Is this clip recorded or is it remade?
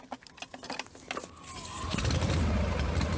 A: recorded